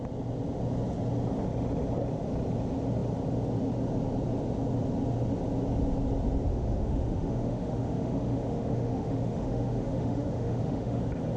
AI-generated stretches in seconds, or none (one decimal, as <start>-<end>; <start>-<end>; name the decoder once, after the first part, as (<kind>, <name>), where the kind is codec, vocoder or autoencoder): 6.5-11.0 (autoencoder, DAC-VAE)